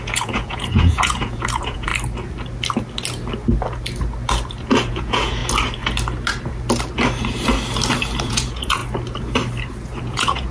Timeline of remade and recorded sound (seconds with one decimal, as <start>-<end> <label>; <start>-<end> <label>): 0.0-1.9 remade; 1.9-4.9 recorded; 4.9-5.4 remade; 5.4-8.2 recorded; 8.2-8.8 remade; 8.8-10.0 recorded; 10.0-10.5 remade